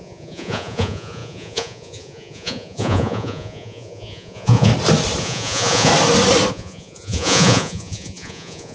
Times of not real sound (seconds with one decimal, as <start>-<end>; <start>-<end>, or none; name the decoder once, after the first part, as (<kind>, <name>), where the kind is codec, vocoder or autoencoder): 0.0-4.7 (vocoder, Vocos); 5.2-5.9; 6.5-8.7